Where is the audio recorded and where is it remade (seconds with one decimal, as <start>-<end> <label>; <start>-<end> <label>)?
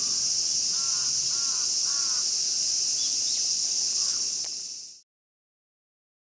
0.0-3.5 recorded; 3.5-4.4 remade; 4.4-6.2 recorded